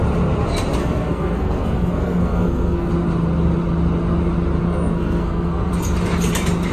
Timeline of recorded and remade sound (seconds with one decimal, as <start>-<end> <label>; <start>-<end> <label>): 0.0-0.8 recorded; 0.8-2.9 remade; 2.9-4.6 recorded; 4.6-5.7 remade; 5.7-6.7 recorded

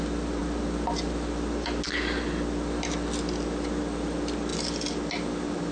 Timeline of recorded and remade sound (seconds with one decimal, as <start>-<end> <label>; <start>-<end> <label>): 0.0-5.7 recorded

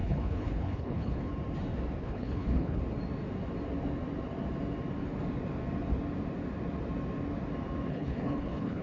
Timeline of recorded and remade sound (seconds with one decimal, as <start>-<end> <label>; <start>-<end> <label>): 0.0-1.3 remade; 1.3-2.0 recorded; 2.0-2.8 remade; 2.8-7.9 recorded; 7.9-8.8 remade

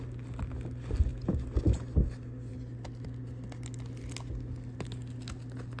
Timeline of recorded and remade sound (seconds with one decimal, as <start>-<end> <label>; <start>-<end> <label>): 0.0-5.8 recorded

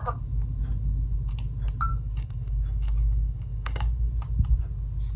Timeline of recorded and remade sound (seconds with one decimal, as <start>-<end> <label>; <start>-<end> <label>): 0.0-1.9 recorded; 1.9-4.1 remade; 4.1-5.2 recorded